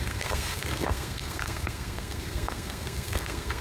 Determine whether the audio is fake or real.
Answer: fake